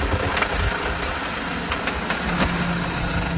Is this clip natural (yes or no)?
yes